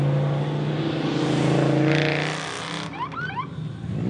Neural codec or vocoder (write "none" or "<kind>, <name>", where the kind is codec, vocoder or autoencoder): none